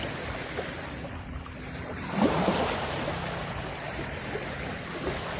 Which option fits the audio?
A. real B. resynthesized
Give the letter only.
A